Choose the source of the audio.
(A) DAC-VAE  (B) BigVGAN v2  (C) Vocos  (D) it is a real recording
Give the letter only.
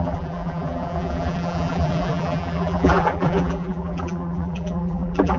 B